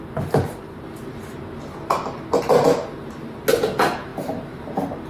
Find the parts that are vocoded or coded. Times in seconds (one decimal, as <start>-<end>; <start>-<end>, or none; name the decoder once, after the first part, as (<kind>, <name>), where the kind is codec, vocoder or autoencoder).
none